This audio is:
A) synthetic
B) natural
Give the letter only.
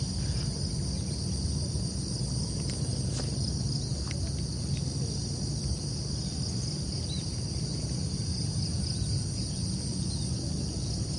B